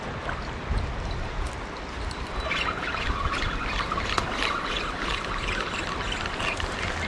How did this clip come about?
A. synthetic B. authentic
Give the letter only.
B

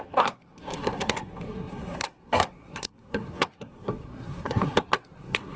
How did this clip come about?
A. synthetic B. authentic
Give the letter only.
A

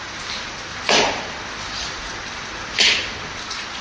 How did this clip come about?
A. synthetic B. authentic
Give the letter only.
B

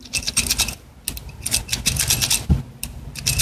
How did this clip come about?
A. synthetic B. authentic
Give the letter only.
B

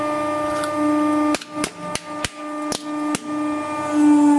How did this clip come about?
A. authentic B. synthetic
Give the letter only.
A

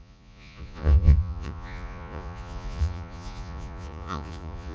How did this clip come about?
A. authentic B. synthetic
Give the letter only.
B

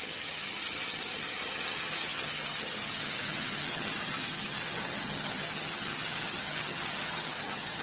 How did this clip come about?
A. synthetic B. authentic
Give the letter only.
A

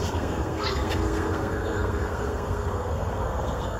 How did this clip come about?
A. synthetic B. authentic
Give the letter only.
A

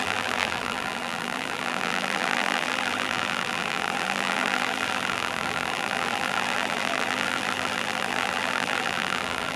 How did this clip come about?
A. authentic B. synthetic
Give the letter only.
B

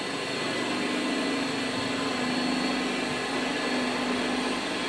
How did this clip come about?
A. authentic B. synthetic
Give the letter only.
A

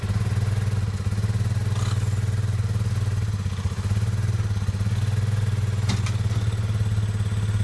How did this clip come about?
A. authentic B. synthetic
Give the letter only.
A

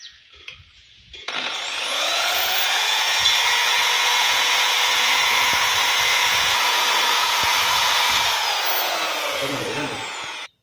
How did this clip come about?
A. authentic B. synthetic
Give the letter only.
B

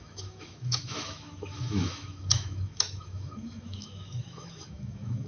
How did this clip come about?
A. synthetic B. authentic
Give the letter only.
A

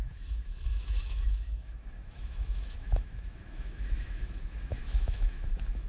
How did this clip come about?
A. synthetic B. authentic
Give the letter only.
A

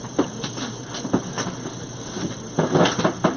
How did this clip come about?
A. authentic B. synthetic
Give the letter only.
A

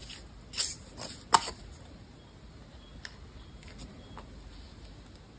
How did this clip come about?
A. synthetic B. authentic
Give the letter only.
B